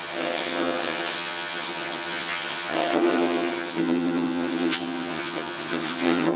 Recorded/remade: remade